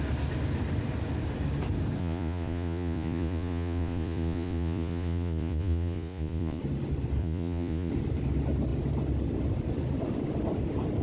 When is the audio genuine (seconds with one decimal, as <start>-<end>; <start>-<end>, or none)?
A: 0.0-2.0; 6.6-7.2; 7.9-11.0